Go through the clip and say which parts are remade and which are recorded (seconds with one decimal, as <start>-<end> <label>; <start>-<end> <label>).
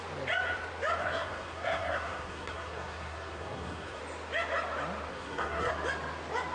0.0-1.0 recorded; 1.0-4.0 remade; 4.0-5.1 recorded; 5.1-5.7 remade; 5.7-6.5 recorded